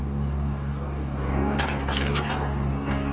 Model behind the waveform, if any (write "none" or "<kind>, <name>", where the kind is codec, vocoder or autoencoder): codec, DAC